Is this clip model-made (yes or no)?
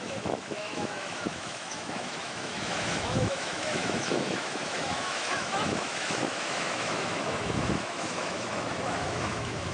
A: yes